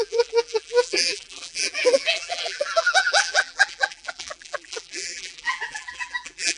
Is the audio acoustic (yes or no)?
no